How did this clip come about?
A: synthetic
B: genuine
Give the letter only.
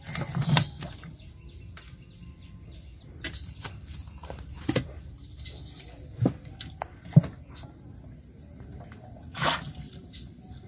B